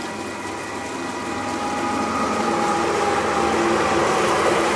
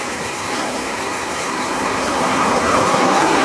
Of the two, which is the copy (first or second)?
second